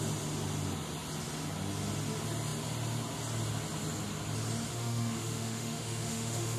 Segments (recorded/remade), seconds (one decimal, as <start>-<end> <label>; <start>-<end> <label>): 0.0-4.7 recorded; 4.7-6.6 remade